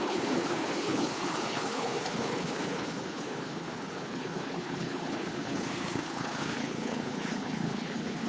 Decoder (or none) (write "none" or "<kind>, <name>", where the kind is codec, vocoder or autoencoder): codec, HILCodec